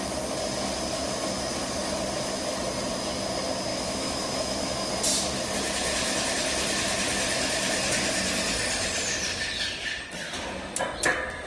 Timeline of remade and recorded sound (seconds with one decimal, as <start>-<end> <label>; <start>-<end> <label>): 0.0-3.7 recorded; 3.7-4.9 remade; 4.9-11.5 recorded

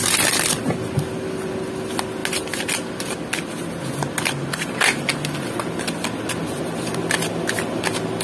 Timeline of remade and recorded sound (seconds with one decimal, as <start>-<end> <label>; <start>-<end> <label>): 0.0-8.2 recorded

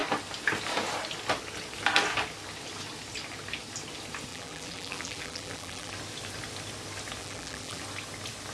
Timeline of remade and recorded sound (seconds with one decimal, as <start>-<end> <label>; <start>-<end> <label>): 0.0-4.3 recorded; 4.3-5.9 remade; 5.9-7.2 recorded; 7.2-7.8 remade; 7.8-8.5 recorded

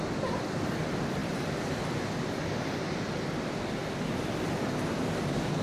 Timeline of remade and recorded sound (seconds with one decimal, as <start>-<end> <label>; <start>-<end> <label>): 0.0-3.8 remade; 3.8-4.7 recorded; 4.7-5.6 remade

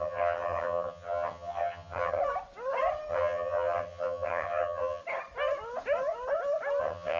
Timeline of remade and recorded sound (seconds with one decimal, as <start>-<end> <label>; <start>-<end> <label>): 0.0-2.2 remade; 2.2-3.1 recorded; 3.1-5.0 remade; 5.0-6.8 recorded; 6.8-7.2 remade

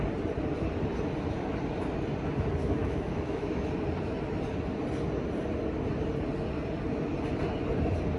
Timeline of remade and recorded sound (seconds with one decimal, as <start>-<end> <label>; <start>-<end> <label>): 0.0-2.6 recorded; 2.6-3.6 remade; 3.6-8.2 recorded